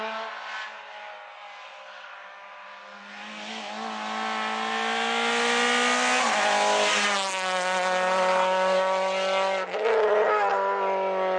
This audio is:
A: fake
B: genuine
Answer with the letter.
B